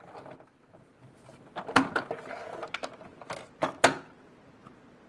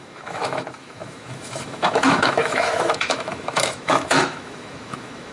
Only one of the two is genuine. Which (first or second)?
first